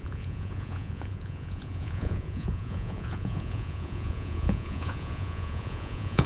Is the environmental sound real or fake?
fake